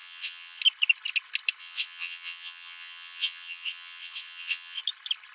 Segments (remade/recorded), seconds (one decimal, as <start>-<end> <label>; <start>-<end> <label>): 0.0-0.6 remade; 0.6-1.6 recorded; 1.6-4.8 remade; 4.8-5.3 recorded